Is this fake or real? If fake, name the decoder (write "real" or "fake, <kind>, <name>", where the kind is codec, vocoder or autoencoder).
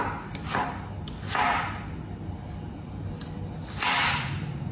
real